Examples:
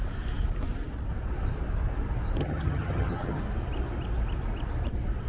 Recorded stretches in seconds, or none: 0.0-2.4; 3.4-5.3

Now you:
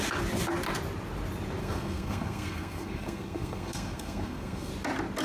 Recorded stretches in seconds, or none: 0.0-1.6; 4.7-5.2

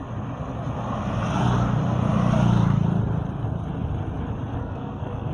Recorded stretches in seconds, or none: 0.0-4.6

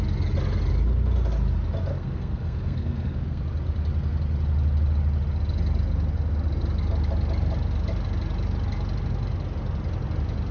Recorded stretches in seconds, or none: 0.0-1.9; 3.4-10.5